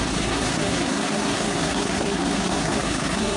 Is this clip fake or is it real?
fake